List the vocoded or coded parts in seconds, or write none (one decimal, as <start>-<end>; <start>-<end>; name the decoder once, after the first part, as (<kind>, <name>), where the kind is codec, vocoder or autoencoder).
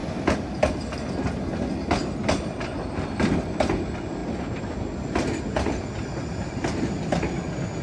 none